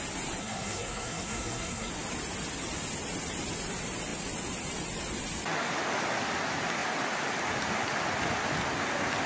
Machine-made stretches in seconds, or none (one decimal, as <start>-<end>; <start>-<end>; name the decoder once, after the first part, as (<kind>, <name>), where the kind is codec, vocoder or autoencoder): 0.4-1.9 (codec, SNAC)